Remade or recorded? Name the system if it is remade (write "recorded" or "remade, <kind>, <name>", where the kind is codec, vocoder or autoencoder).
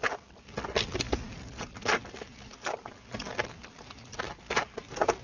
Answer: recorded